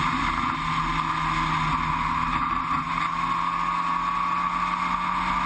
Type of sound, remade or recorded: recorded